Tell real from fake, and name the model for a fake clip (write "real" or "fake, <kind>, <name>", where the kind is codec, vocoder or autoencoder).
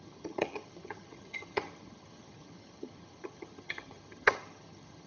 fake, vocoder, HiFi-GAN